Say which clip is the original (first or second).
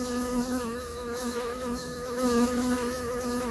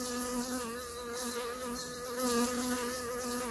second